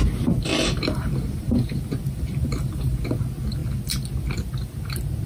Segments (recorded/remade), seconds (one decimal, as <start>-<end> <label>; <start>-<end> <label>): 0.0-0.5 recorded; 0.5-3.0 remade; 3.0-5.3 recorded